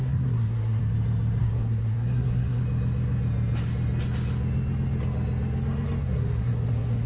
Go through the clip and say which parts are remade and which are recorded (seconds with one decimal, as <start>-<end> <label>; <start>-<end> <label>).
0.0-0.8 remade; 0.8-1.4 recorded; 1.4-2.6 remade; 2.6-6.0 recorded; 6.0-7.1 remade